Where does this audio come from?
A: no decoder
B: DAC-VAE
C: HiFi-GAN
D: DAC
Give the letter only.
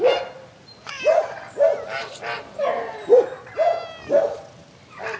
A